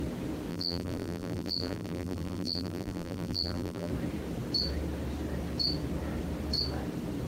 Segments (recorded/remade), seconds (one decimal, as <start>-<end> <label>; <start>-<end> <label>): 0.0-0.5 recorded; 0.5-3.9 remade; 3.9-7.3 recorded